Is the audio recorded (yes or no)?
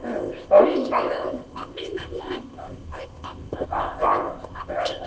no